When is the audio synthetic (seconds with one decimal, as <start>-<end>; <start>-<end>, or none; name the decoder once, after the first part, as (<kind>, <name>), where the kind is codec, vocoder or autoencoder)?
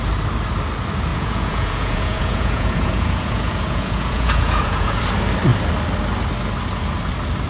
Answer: 1.1-5.0 (vocoder, Vocos)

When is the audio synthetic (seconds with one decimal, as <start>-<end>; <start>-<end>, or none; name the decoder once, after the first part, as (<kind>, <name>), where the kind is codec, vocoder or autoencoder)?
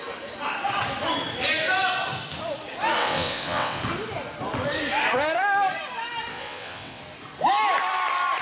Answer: 3.0-3.8 (vocoder, WaveNeXt); 6.3-7.0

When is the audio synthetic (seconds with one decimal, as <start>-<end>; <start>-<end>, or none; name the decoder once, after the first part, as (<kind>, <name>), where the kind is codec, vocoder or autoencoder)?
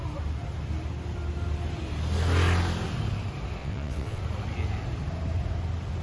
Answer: 3.6-4.2 (vocoder, WaveNeXt)